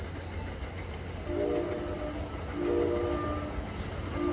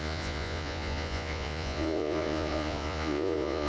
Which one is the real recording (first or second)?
first